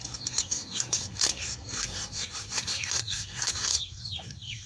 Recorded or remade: remade